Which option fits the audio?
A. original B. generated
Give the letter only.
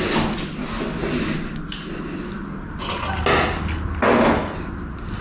A